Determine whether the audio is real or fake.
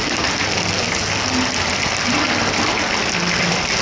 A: real